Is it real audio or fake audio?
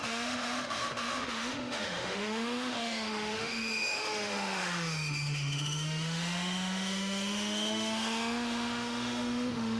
fake